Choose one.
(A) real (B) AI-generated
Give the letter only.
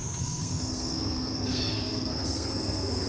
B